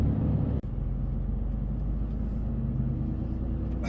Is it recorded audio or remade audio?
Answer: recorded